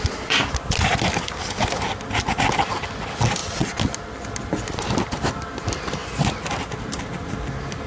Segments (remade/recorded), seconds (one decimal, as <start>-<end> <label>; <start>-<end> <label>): 0.0-7.9 recorded

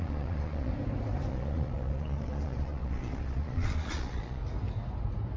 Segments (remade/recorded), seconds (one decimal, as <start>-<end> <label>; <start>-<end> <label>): 0.0-0.7 remade; 0.7-1.3 recorded; 1.3-4.4 remade; 4.4-5.4 recorded